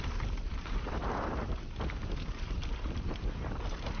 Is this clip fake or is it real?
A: fake